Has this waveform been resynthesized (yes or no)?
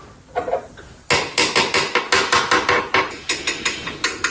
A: no